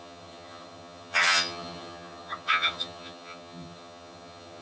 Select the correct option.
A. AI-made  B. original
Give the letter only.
A